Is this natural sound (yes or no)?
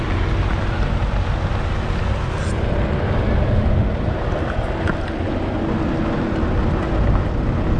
yes